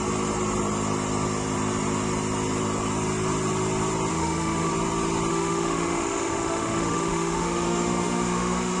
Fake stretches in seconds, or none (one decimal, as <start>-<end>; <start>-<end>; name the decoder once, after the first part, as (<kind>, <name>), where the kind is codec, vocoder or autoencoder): 4.1-4.7 (autoencoder, DAC-VAE); 5.3-8.8